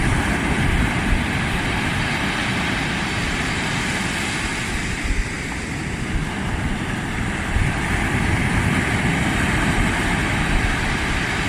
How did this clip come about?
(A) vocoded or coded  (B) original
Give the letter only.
B